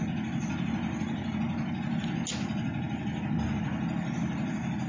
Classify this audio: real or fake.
real